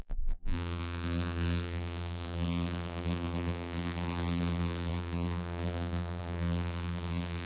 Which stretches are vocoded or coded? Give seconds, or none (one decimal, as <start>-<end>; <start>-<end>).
0.0-7.5